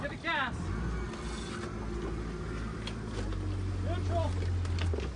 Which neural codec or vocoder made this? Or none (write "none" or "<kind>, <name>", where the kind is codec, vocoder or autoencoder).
none